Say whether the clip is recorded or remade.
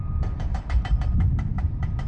recorded